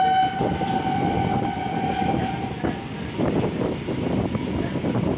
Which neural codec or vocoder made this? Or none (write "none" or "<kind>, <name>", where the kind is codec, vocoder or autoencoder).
none